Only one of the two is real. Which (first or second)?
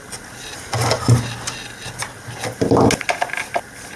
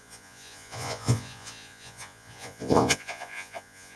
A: first